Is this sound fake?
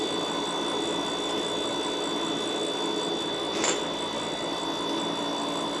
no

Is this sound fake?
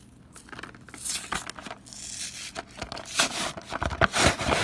no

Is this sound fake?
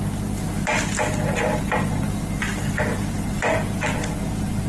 no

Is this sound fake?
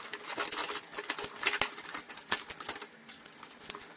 no